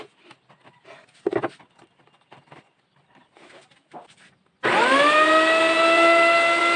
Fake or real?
real